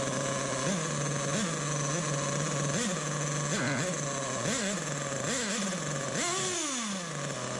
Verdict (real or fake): real